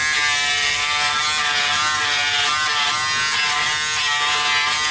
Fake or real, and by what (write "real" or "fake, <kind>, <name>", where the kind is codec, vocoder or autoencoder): real